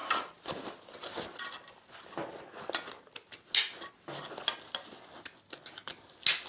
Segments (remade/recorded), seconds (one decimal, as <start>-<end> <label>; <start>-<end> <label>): 0.0-6.5 recorded